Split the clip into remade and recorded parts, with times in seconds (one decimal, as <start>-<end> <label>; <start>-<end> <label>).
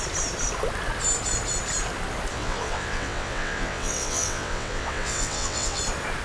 0.0-2.3 recorded; 2.3-5.8 remade; 5.8-6.2 recorded